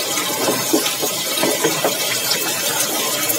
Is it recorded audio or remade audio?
recorded